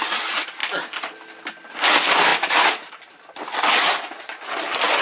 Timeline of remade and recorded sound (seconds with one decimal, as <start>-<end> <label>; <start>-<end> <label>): 0.0-2.3 recorded; 2.3-2.9 remade; 2.9-5.0 recorded

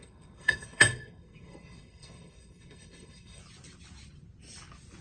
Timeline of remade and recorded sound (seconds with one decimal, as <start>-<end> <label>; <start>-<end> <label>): 0.0-3.4 remade; 3.4-5.0 recorded

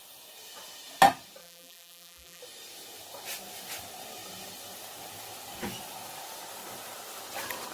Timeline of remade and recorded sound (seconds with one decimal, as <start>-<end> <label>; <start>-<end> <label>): 0.0-1.4 recorded; 1.4-2.4 remade; 2.4-7.7 recorded

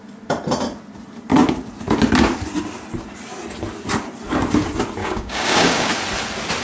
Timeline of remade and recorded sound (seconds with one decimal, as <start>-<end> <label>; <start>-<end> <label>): 0.0-5.0 recorded; 5.0-5.9 remade; 5.9-6.6 recorded

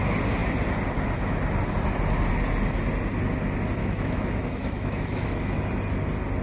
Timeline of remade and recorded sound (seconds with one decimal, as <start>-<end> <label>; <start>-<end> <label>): 0.0-3.8 recorded; 3.8-5.6 remade; 5.6-6.4 recorded

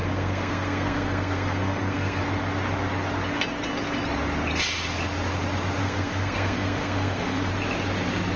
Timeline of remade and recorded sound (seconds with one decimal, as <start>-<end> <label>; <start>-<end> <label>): 0.0-2.2 remade; 2.2-5.8 recorded; 5.8-7.5 remade; 7.5-8.4 recorded